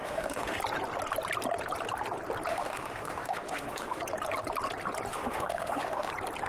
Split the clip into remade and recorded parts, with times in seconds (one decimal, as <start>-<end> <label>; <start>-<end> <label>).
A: 0.0-0.6 remade; 0.6-2.5 recorded; 2.5-4.0 remade; 4.0-5.1 recorded; 5.1-6.1 remade; 6.1-6.5 recorded